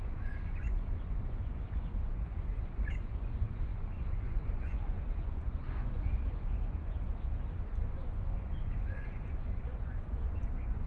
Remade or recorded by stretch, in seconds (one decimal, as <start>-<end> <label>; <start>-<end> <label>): 0.0-10.9 remade

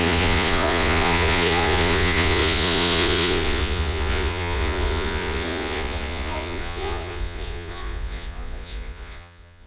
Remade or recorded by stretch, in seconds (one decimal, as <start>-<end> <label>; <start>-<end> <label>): 0.0-9.7 remade

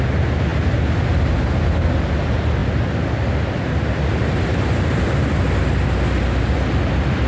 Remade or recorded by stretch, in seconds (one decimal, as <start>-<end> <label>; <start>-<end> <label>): 0.0-7.3 recorded